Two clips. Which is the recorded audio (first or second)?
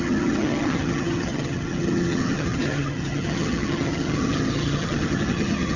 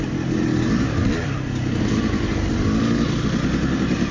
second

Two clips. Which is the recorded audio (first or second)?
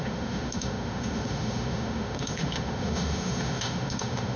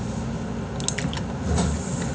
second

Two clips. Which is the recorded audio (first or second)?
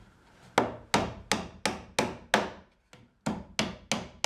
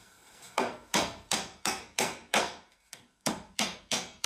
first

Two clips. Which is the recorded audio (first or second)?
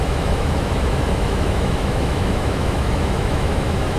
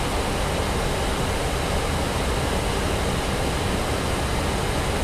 second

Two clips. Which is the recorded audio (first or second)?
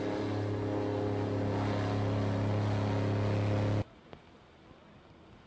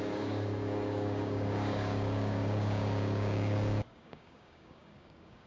first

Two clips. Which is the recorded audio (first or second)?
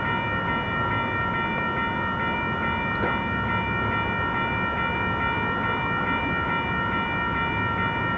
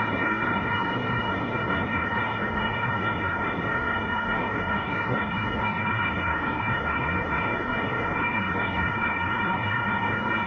first